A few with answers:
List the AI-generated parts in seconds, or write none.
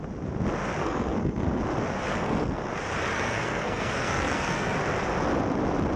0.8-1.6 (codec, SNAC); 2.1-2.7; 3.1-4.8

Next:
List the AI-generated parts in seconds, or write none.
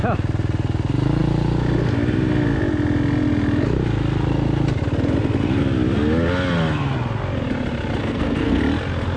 8.0-8.6 (codec, SNAC)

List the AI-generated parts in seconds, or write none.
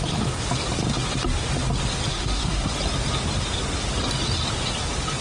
2.1-2.7 (codec, SNAC)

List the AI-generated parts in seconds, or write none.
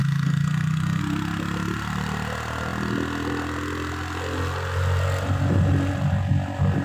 0.0-1.0 (codec, SNAC)